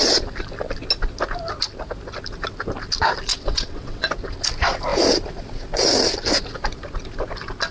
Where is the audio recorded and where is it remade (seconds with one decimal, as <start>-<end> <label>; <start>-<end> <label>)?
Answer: 0.0-3.3 recorded; 3.3-4.0 remade; 4.0-7.7 recorded

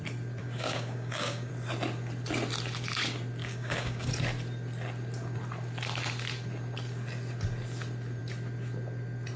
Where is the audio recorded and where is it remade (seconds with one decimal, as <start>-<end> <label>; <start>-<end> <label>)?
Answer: 0.0-0.4 recorded; 0.4-1.5 remade; 1.5-3.4 recorded; 3.4-4.1 remade; 4.1-9.4 recorded